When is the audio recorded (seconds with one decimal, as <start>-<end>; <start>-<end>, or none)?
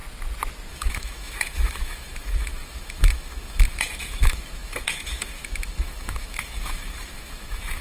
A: 0.0-0.7